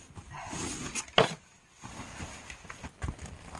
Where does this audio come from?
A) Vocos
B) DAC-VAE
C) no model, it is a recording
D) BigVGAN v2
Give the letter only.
C